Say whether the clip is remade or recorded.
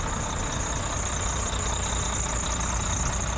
recorded